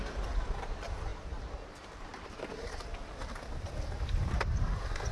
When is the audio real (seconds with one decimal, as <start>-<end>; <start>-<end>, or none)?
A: 0.0-5.1